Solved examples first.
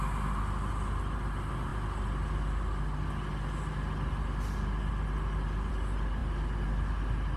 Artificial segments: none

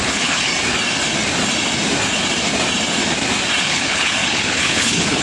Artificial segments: 0.0-0.5 (codec, HILCodec); 3.6-5.2

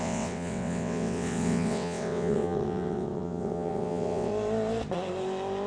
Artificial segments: 0.0-4.3 (vocoder, WaveNeXt)

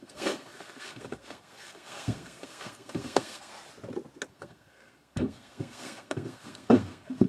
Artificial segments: 0.0-3.5 (codec, SNAC); 4.3-7.3

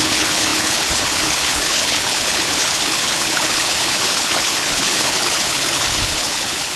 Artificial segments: 0.0-6.8 (codec, HILCodec)